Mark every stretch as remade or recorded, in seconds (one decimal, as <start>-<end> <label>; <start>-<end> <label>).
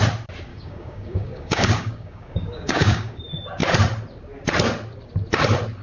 0.0-0.5 recorded; 0.5-3.2 remade; 3.2-5.8 recorded